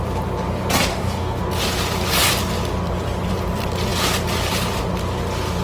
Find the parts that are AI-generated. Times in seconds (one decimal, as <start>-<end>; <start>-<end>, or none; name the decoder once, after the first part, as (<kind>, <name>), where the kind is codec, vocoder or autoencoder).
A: 0.9-1.4 (codec, DAC)